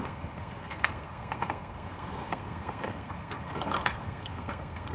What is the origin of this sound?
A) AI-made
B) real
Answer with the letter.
A